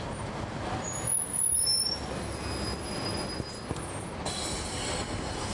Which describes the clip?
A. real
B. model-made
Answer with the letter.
A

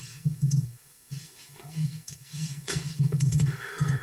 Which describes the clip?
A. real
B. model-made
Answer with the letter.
B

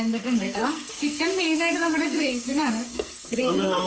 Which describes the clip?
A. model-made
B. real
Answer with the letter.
A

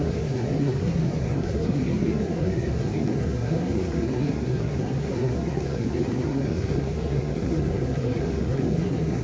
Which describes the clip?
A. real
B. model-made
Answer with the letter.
B